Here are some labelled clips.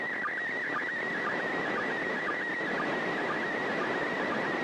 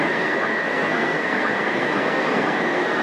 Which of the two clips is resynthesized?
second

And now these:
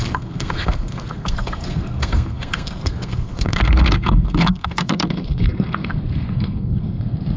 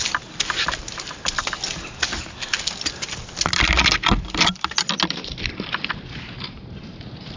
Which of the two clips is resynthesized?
first